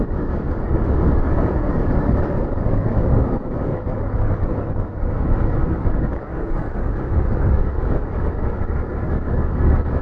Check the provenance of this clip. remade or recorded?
remade